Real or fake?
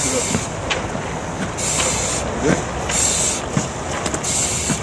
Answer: real